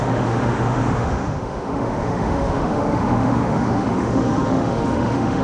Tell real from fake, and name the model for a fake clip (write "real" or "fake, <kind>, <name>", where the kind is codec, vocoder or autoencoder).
fake, autoencoder, DAC-VAE